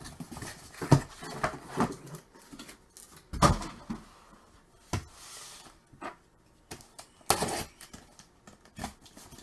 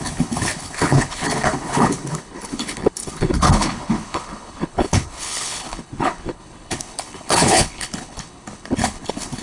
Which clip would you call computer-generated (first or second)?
second